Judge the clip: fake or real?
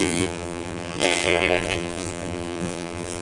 fake